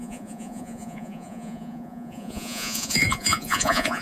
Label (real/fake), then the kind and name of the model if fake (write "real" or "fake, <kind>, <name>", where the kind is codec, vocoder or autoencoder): fake, vocoder, Vocos